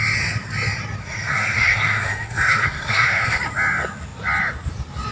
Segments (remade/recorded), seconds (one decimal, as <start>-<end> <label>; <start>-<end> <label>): 0.0-1.0 recorded; 1.0-3.4 remade; 3.4-5.1 recorded